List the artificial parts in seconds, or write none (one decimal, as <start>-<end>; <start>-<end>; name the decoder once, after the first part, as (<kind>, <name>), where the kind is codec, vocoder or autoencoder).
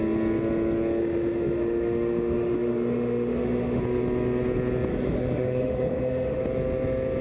1.0-3.8 (autoencoder, DAC-VAE); 4.9-6.4